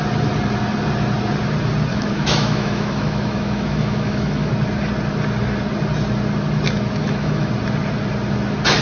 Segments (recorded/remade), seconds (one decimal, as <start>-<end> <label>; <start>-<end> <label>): 0.0-1.9 recorded; 1.9-4.5 remade; 4.5-7.0 recorded; 7.0-7.5 remade; 7.5-8.8 recorded